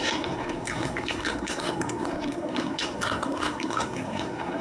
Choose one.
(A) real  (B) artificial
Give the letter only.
B